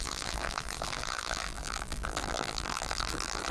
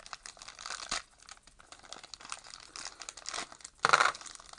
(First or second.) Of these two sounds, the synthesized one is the first